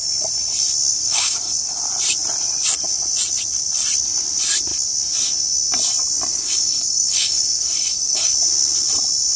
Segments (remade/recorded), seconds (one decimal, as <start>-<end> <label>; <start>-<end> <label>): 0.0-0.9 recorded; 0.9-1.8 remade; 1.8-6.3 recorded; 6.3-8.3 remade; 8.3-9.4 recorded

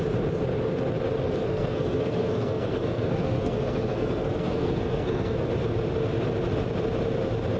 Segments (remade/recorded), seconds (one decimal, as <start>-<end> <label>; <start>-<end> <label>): 0.0-1.4 recorded; 1.4-5.5 remade; 5.5-7.6 recorded

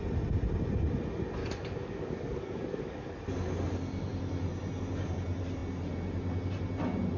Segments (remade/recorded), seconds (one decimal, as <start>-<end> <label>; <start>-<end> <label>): 0.0-1.4 recorded; 1.4-3.1 remade; 3.1-7.2 recorded

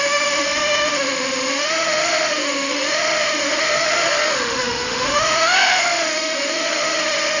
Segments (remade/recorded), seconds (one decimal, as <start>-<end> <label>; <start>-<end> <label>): 0.0-7.4 remade